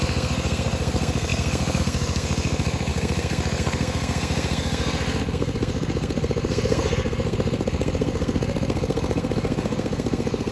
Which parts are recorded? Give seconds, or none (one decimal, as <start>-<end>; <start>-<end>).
none

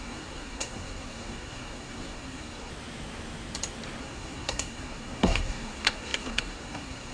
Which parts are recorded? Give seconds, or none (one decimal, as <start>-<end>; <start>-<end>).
2.7-4.0

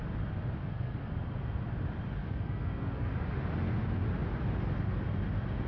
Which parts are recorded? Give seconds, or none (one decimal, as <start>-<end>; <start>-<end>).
0.0-0.6; 1.1-2.2; 3.1-5.7

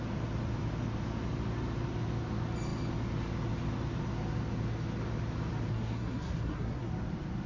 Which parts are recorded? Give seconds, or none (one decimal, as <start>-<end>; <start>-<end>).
0.0-5.7; 6.9-7.5

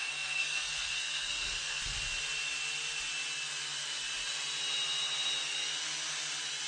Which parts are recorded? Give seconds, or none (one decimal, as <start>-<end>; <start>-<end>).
1.8-6.7

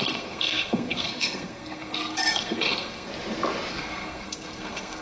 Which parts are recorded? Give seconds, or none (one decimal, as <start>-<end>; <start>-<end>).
3.1-3.7

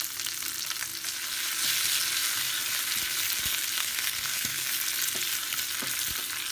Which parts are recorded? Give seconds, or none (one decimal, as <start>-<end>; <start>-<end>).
0.0-3.8; 4.7-6.5

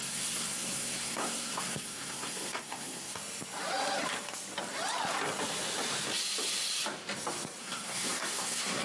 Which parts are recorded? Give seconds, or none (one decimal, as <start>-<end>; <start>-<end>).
3.2-7.6